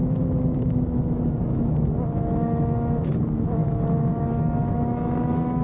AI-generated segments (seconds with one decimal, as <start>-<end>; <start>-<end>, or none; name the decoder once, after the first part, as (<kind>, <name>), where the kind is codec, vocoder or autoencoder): 0.0-5.6 (autoencoder, DAC-VAE)